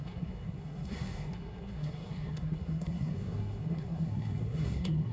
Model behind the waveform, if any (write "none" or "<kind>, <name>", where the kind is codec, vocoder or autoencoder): codec, SNAC